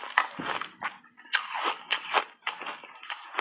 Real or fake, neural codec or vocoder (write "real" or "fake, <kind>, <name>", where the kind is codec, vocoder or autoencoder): real